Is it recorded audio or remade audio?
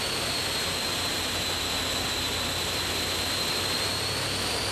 recorded